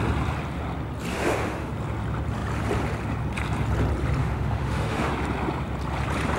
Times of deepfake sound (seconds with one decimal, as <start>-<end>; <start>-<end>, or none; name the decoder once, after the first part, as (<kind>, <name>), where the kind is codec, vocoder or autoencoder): 1.1-1.7 (autoencoder, DAC-VAE); 4.2-5.1